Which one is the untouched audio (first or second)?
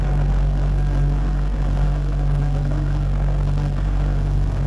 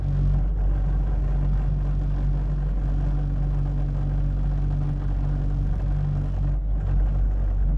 second